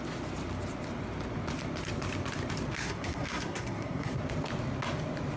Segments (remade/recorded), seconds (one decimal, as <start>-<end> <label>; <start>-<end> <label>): 0.0-2.8 recorded; 2.8-4.2 remade; 4.2-5.4 recorded